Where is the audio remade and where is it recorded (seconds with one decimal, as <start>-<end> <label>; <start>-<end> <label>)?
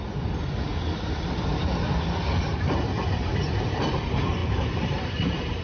0.0-2.5 recorded; 2.5-4.0 remade; 4.0-4.4 recorded; 4.4-5.6 remade